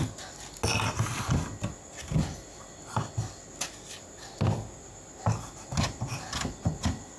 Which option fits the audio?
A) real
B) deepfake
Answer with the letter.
A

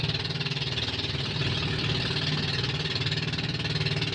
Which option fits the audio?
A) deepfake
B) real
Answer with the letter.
B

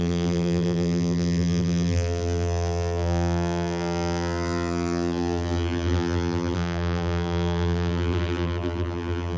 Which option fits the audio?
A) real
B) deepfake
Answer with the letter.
B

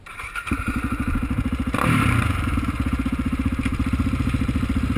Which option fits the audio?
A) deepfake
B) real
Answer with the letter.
A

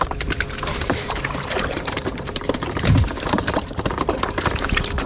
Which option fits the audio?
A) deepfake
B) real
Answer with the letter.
A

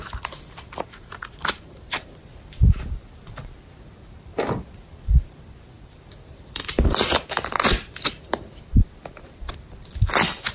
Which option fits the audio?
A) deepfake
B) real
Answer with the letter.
A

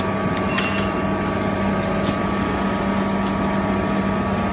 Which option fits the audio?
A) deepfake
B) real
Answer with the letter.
B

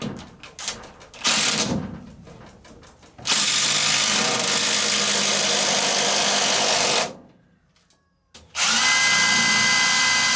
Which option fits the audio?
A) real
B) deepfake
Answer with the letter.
A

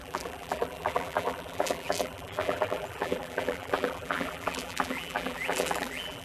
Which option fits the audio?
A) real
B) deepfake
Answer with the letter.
B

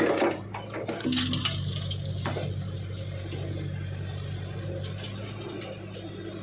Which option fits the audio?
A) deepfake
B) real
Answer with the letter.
B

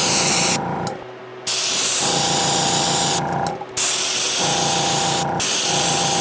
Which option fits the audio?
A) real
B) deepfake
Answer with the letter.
A